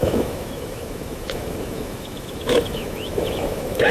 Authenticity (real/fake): fake